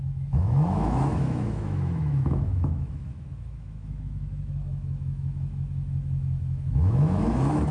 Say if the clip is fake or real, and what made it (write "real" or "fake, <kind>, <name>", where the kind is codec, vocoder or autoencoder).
fake, autoencoder, DAC-VAE